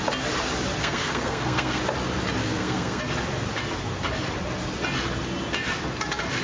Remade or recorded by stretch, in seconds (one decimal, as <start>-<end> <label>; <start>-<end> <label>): 0.0-0.8 recorded; 0.8-1.8 remade; 1.8-2.4 recorded; 2.4-3.0 remade; 3.0-6.4 recorded

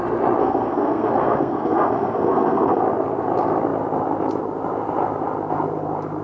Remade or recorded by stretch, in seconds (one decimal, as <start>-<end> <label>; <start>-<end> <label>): 0.0-0.4 recorded; 0.4-2.8 remade; 2.8-6.2 recorded

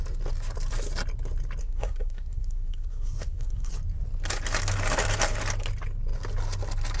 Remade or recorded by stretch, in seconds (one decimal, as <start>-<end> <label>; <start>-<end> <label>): 0.0-1.6 recorded; 1.6-3.7 remade; 3.7-7.0 recorded